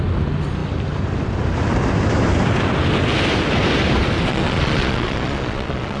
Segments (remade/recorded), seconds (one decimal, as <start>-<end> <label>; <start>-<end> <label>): 0.0-4.3 recorded; 4.3-6.0 remade